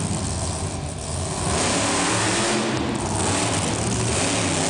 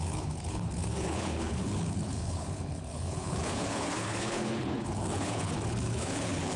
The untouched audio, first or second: first